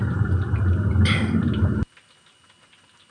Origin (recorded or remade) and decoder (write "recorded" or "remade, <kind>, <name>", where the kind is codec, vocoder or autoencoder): recorded